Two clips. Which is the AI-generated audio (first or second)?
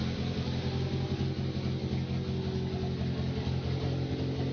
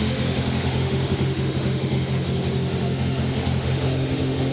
second